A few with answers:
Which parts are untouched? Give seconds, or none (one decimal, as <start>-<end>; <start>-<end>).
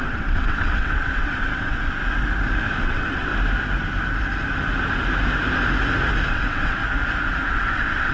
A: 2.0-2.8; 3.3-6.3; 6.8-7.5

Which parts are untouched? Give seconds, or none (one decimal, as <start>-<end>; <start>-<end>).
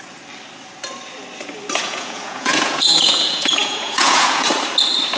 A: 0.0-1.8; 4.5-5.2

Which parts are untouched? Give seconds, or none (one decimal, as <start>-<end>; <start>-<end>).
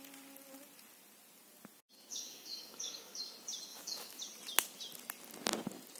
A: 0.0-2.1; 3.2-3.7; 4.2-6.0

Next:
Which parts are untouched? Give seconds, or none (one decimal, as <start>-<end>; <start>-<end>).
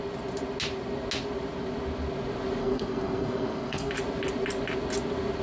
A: 0.0-2.6; 3.9-5.4